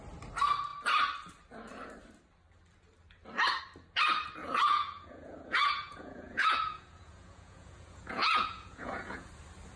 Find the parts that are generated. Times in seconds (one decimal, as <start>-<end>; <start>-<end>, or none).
4.4-9.3